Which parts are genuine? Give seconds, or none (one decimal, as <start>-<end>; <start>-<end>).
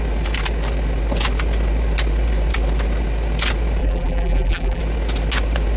0.0-3.8; 4.8-5.8